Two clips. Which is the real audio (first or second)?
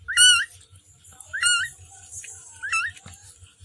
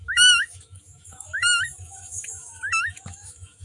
first